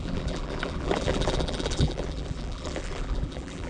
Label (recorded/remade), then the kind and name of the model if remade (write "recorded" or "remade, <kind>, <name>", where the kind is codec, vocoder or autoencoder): remade, vocoder, BigVGAN v2